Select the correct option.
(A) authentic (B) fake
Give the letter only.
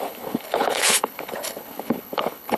B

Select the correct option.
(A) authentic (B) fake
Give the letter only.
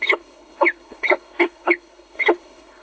B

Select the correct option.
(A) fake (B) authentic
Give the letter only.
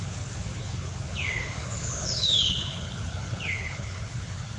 A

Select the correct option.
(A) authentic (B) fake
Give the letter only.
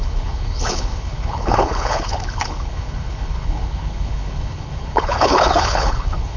B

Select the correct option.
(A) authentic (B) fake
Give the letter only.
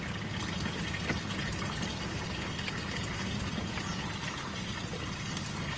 A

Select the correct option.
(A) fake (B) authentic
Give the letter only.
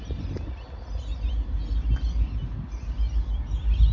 B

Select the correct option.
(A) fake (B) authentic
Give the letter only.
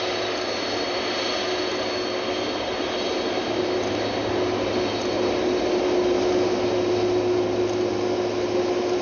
B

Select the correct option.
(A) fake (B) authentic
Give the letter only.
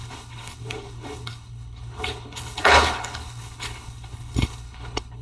A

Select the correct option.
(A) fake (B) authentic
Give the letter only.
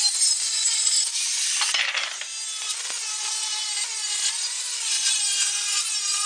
B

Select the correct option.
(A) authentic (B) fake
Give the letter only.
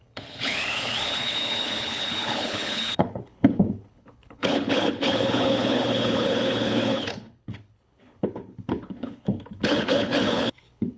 B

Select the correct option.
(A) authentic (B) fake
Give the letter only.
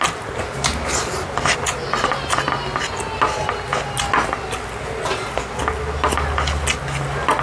A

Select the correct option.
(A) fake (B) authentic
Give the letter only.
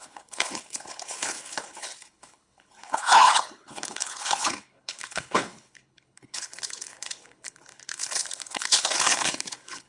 A